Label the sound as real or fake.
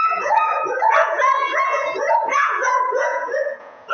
fake